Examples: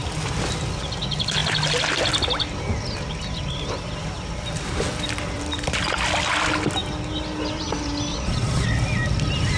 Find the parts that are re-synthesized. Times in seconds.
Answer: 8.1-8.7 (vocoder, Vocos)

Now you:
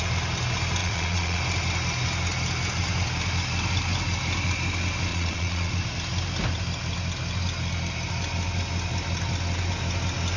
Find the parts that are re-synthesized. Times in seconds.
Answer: 0.8-1.4 (vocoder, Vocos); 5.1-5.7

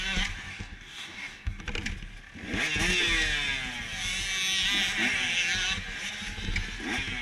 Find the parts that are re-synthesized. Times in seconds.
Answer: 0.5-1.6 (codec, DAC)